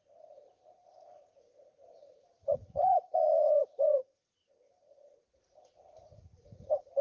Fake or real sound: fake